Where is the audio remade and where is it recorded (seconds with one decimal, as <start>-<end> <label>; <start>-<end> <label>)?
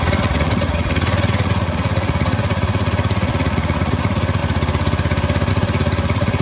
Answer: 0.0-4.4 remade; 4.4-5.5 recorded; 5.5-6.4 remade